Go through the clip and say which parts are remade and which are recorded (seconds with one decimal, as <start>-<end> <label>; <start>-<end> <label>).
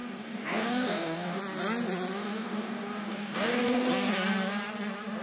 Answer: 0.0-1.4 remade; 1.4-2.2 recorded; 2.2-3.9 remade; 3.9-5.2 recorded